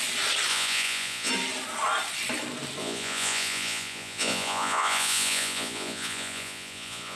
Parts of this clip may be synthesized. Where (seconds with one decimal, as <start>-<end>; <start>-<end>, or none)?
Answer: 0.5-1.3; 2.8-7.2